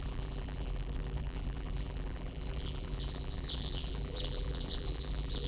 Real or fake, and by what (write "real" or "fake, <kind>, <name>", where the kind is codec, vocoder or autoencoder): fake, vocoder, BigVGAN v2